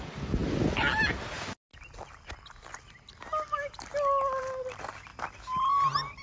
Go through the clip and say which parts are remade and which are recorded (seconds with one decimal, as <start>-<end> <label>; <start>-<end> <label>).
0.0-6.2 recorded